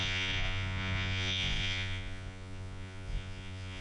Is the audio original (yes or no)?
no